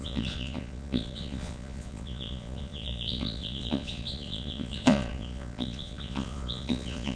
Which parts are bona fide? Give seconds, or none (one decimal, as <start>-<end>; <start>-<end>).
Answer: none